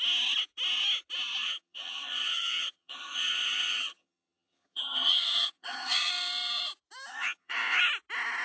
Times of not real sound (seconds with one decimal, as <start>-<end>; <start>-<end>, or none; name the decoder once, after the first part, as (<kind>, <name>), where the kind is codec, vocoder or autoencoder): 1.4-6.1 (vocoder, HiFi-GAN); 7.1-7.8

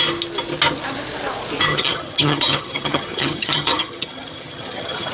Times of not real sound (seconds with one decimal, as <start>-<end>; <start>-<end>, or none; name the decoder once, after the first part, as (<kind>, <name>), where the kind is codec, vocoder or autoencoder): 1.7-5.1 (vocoder, HiFi-GAN)

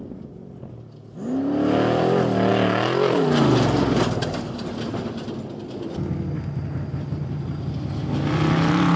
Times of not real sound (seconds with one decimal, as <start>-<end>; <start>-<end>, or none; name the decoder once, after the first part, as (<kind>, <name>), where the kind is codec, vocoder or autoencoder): none

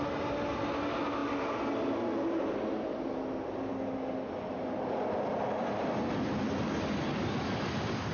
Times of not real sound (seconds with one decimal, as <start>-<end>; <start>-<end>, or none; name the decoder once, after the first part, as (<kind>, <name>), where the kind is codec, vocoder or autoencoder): none

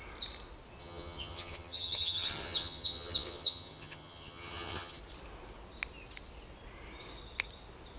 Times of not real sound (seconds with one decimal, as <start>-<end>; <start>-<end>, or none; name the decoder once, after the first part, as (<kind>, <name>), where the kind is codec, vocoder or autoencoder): 0.8-5.0 (vocoder, HiFi-GAN)

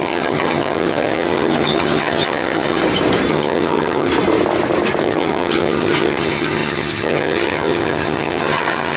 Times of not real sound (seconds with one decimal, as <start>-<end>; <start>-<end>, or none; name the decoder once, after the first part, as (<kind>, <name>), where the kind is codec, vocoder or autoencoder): 0.0-2.8 (vocoder, HiFi-GAN); 3.3-4.1; 5.0-9.0

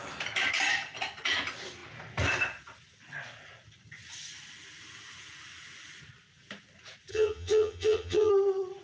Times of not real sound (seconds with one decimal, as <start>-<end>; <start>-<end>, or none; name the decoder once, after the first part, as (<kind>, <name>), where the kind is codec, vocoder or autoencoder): 7.1-8.3 (vocoder, HiFi-GAN)

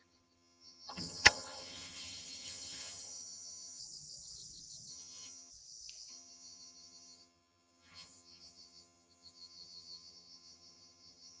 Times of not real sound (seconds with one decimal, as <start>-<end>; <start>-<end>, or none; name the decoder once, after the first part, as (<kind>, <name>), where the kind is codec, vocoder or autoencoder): 0.0-3.8 (vocoder, HiFi-GAN); 4.9-5.5; 6.1-11.4